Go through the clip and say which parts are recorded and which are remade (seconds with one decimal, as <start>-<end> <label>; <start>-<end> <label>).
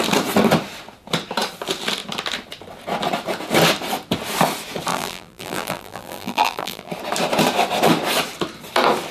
0.0-4.9 recorded; 4.9-6.9 remade; 6.9-9.1 recorded